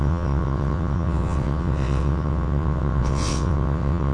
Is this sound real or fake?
fake